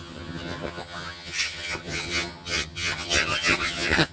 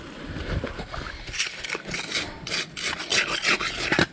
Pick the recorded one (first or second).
second